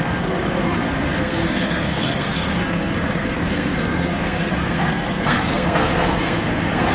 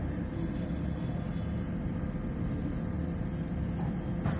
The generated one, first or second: first